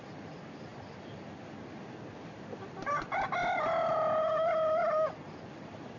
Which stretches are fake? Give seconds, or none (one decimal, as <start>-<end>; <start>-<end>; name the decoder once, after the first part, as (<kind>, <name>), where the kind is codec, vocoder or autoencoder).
none